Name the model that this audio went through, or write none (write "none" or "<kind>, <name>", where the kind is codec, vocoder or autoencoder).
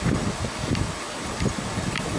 vocoder, BigVGAN v2